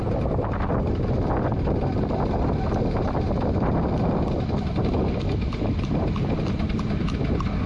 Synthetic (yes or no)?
no